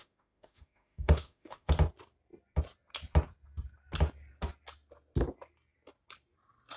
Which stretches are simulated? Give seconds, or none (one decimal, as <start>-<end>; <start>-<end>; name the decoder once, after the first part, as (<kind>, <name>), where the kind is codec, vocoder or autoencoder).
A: 0.0-1.7 (autoencoder, DAC-VAE)